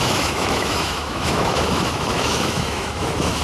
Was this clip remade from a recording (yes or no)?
yes